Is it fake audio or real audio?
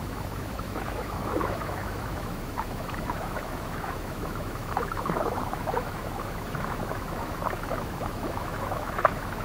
fake